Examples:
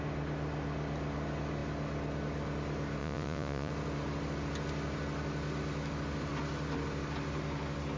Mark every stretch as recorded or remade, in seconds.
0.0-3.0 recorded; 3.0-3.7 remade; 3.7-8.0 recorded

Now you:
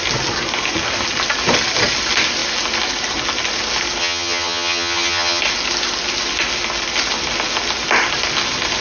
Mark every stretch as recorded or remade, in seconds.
0.0-4.0 recorded; 4.0-5.4 remade; 5.4-8.8 recorded